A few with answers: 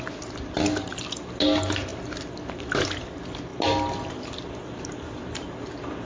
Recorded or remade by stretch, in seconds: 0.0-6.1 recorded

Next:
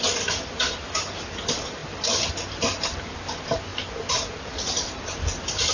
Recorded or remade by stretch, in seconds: 0.0-5.7 recorded

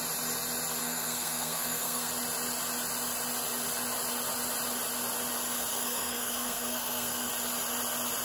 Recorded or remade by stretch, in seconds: 0.0-0.8 recorded; 0.8-2.1 remade; 2.1-5.7 recorded; 5.7-7.3 remade; 7.3-8.2 recorded

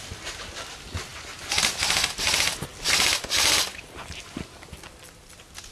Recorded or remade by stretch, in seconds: 0.0-2.7 recorded; 2.7-5.3 remade; 5.3-5.7 recorded

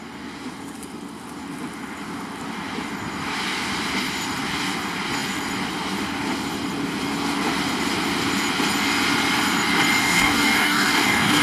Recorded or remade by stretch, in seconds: 0.0-10.0 recorded; 10.0-11.4 remade

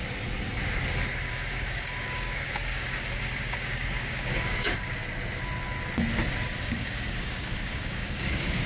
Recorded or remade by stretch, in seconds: 0.0-1.3 recorded; 1.3-5.0 remade; 5.0-6.6 recorded; 6.6-8.7 remade

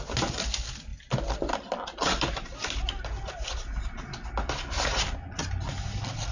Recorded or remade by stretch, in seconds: 0.0-6.3 recorded